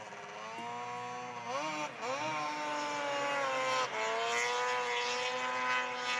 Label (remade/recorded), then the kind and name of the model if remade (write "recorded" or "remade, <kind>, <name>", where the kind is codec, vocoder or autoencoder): recorded